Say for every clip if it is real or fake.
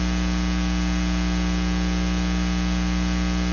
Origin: real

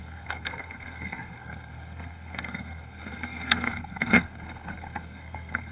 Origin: fake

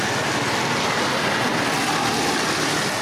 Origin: real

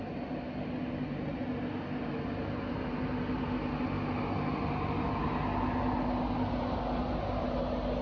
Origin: real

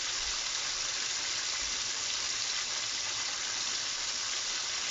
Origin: real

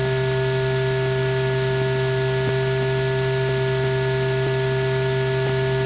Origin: real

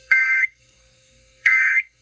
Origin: fake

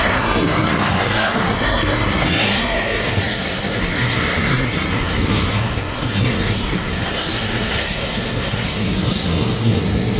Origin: fake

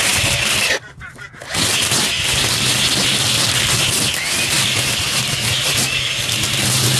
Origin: real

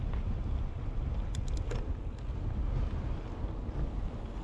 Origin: real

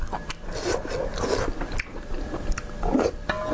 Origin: real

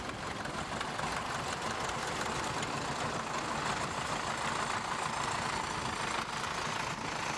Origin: real